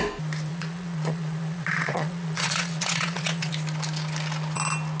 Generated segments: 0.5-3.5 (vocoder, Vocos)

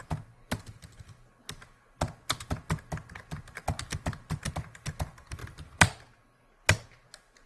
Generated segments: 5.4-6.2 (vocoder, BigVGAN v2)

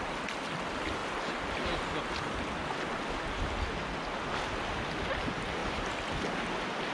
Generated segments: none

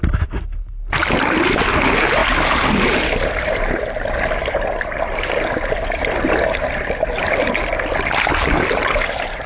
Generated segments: none

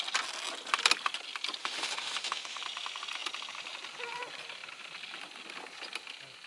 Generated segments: 1.6-2.6 (autoencoder, DAC-VAE)